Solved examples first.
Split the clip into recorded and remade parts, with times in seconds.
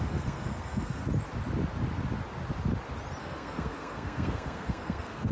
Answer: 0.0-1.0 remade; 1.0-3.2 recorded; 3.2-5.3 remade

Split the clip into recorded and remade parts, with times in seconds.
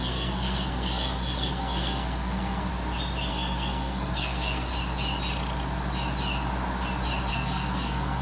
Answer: 0.0-2.7 remade; 2.7-3.3 recorded; 3.3-4.7 remade; 4.7-7.3 recorded; 7.3-8.2 remade